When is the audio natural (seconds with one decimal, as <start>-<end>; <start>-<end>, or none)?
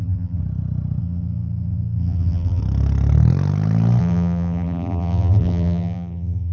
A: 0.4-1.0; 2.6-4.0